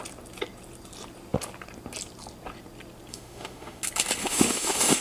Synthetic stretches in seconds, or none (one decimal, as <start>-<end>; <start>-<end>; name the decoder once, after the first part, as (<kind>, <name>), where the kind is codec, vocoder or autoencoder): 3.1-3.8 (autoencoder, DAC-VAE); 4.2-5.0

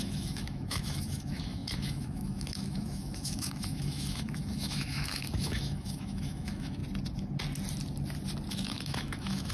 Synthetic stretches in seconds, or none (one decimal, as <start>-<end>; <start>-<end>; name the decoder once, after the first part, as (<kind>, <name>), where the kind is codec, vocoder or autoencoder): 0.0-6.8 (autoencoder, DAC-VAE); 8.5-9.5

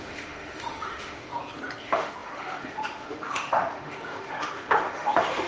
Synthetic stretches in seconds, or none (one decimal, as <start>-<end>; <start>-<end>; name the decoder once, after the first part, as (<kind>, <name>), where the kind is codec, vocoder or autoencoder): 0.0-1.3 (autoencoder, DAC-VAE); 1.8-5.5

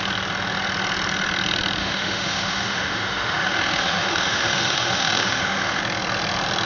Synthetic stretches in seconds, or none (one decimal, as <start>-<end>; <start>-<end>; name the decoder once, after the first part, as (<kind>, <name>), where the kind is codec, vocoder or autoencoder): 1.8-5.8 (autoencoder, DAC-VAE)

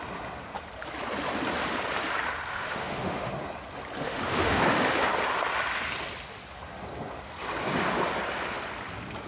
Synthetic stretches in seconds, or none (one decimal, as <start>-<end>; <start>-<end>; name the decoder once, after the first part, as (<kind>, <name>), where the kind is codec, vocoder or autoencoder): 2.5-3.3 (autoencoder, DAC-VAE); 4.0-4.6

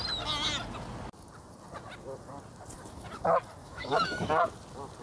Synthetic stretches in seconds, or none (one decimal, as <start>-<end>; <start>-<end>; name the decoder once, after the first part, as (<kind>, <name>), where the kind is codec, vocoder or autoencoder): 3.6-4.3 (autoencoder, DAC-VAE)

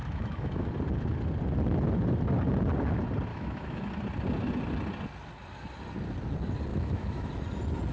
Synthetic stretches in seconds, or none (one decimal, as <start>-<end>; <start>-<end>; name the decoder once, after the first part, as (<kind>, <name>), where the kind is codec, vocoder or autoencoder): 0.0-0.7 (autoencoder, DAC-VAE); 3.3-3.9; 6.7-7.3